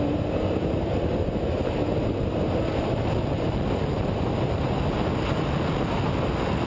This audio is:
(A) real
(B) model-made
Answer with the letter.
A